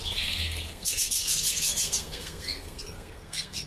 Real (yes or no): no